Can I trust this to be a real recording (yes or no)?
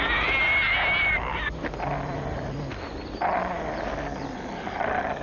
yes